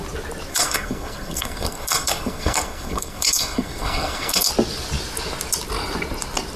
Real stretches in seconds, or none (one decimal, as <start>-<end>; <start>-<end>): 0.0-0.5; 4.5-6.6